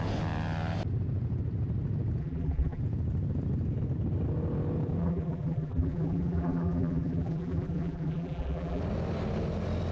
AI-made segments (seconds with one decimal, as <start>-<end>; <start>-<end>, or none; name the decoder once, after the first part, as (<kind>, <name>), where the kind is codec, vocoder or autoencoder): 2.2-2.8 (vocoder, BigVGAN v2); 5.0-8.8